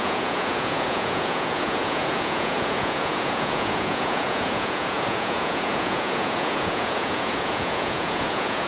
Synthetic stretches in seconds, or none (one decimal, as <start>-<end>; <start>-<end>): 0.0-8.7